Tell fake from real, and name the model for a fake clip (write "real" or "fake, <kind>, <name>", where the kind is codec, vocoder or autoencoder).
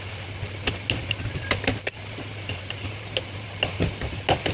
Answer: real